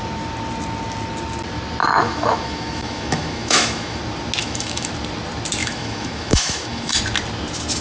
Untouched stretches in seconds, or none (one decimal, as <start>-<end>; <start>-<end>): 0.0-1.8; 4.0-4.4; 4.9-5.6; 7.0-7.8